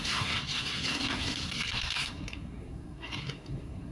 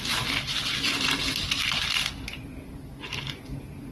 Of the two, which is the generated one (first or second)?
first